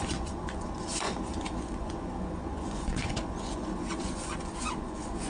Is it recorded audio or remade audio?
remade